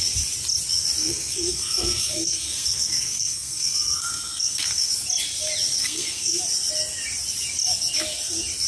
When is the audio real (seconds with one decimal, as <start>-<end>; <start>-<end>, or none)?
0.0-1.0; 4.9-5.8; 6.4-8.7